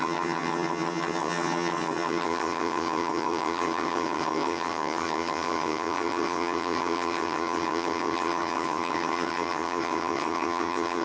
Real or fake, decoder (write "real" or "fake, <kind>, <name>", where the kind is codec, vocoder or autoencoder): fake, vocoder, HiFi-GAN